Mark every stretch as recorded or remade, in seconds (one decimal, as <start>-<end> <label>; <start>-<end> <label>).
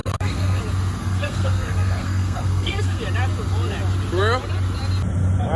0.0-0.6 remade; 0.6-1.0 recorded; 1.0-3.0 remade; 3.0-5.6 recorded